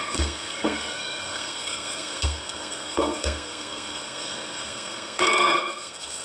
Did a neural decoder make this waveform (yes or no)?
yes